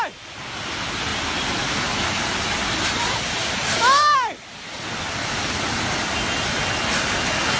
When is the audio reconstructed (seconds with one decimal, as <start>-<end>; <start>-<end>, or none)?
none